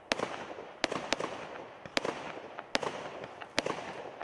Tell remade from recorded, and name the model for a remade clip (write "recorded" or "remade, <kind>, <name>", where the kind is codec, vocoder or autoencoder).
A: recorded